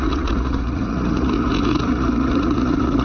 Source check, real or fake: fake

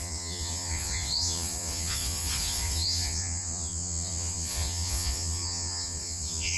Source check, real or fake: fake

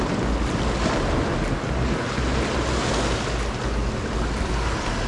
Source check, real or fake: real